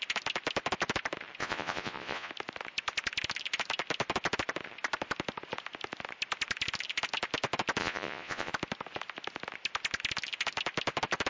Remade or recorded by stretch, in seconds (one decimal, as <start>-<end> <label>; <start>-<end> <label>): 0.0-1.4 recorded; 1.4-2.3 remade; 2.3-7.8 recorded; 7.8-8.5 remade; 8.5-11.3 recorded